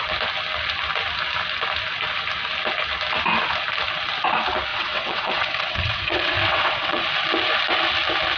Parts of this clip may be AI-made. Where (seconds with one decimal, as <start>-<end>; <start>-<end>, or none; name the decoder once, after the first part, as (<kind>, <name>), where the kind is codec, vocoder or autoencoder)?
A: 4.7-7.0 (vocoder, WaveNeXt)